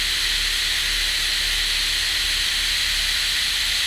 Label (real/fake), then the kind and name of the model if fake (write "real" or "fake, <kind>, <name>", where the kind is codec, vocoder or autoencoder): real